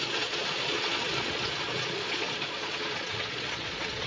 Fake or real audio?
fake